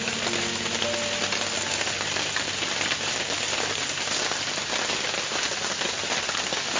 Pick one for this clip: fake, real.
real